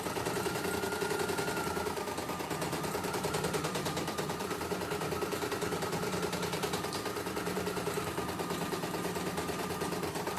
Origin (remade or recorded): remade